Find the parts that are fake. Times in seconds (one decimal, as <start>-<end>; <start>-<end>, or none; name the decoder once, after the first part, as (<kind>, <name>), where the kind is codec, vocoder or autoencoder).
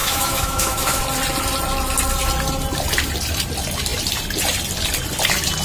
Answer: 0.0-1.0 (autoencoder, DAC-VAE)